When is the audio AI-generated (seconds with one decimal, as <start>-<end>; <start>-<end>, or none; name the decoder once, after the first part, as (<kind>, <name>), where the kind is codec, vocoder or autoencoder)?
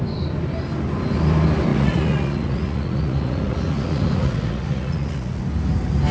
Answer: 1.7-5.4 (vocoder, Vocos)